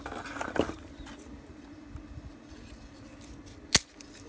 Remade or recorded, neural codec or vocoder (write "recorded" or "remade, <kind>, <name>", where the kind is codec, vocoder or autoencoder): recorded